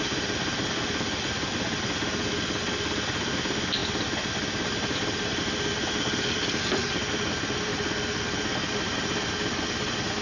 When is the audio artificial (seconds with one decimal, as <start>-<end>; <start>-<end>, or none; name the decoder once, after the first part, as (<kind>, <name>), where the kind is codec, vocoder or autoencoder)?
none